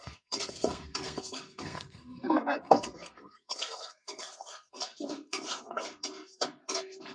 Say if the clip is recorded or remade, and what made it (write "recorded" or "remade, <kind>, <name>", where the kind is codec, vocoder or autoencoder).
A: remade, codec, SNAC